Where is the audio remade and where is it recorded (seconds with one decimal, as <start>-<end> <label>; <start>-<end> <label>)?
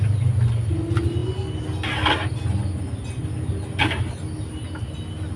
0.0-5.4 recorded